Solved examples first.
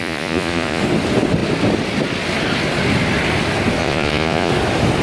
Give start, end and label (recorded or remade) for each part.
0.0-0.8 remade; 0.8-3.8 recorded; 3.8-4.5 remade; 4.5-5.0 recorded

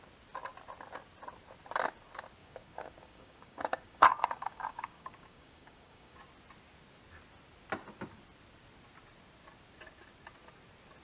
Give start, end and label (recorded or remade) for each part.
0.0-2.4 recorded; 2.4-6.2 remade; 6.2-11.0 recorded

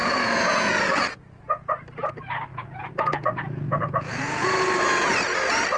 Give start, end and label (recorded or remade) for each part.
0.0-0.7 remade; 0.7-2.5 recorded; 2.5-5.1 remade; 5.1-5.8 recorded

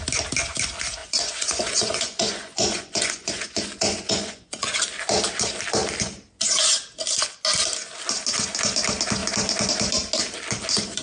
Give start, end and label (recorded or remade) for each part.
0.0-1.0 recorded; 1.0-4.8 remade; 4.8-11.0 recorded